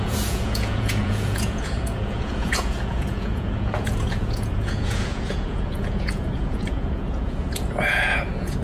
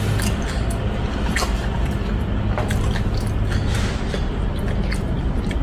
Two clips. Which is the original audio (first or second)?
second